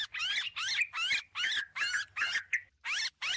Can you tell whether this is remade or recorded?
recorded